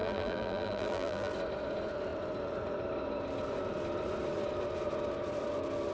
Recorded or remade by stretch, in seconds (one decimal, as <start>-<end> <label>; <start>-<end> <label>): 0.0-1.3 remade; 1.3-5.9 recorded